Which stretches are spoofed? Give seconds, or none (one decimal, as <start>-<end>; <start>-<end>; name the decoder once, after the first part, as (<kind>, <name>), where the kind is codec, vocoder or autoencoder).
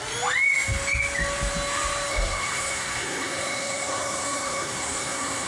2.1-5.5 (codec, SNAC)